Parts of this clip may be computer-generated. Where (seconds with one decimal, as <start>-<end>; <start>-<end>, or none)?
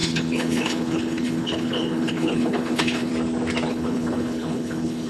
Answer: 0.0-3.1; 3.7-5.1